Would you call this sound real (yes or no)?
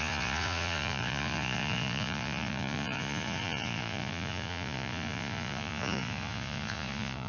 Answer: no